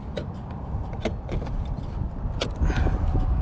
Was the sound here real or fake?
real